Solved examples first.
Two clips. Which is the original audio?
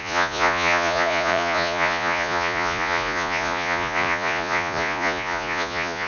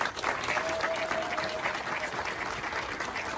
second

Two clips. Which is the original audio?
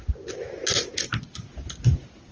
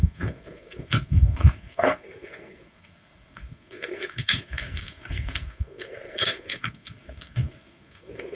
first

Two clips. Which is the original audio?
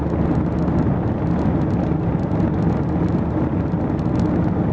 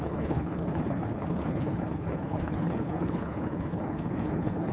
first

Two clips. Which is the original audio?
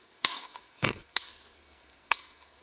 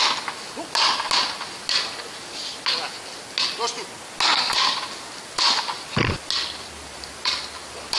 second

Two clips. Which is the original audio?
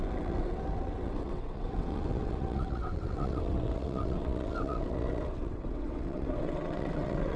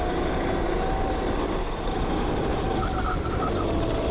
second